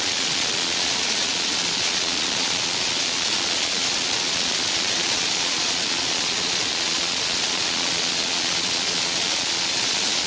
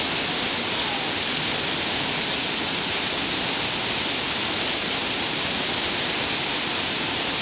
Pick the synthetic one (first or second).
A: first